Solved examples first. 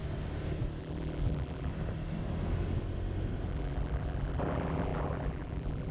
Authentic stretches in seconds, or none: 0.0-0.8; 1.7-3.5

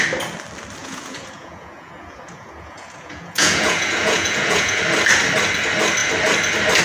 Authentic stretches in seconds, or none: 0.0-0.8; 4.8-6.8

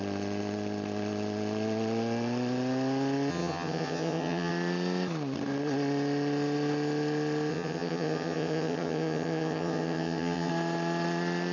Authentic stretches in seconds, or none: 0.0-3.3; 4.5-7.5; 10.5-11.5

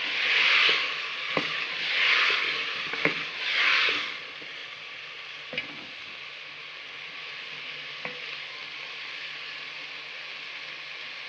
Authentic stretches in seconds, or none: 0.0-11.3

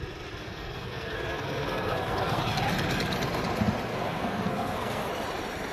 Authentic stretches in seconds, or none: 0.0-0.4; 2.4-3.9; 5.1-5.7

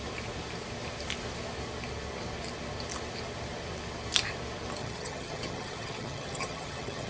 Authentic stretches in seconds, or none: 0.0-4.8

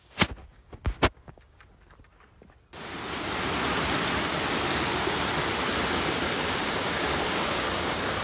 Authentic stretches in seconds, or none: 0.0-0.4; 1.6-5.9

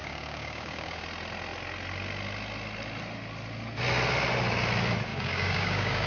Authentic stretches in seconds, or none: 1.0-5.1